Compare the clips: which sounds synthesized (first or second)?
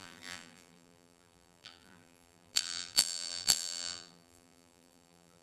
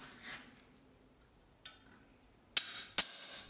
first